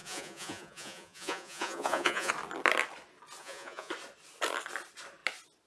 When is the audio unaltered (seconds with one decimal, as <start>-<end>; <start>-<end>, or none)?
2.3-3.4; 3.9-5.7